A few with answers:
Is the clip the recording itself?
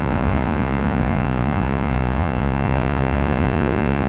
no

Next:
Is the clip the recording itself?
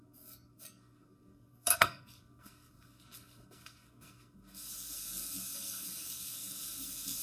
no